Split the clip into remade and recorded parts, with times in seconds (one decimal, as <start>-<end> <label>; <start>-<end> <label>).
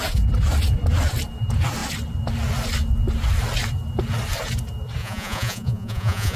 0.0-5.0 recorded; 5.0-6.4 remade